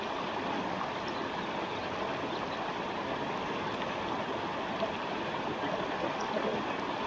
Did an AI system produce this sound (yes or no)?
no